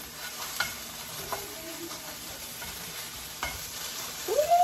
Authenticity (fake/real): fake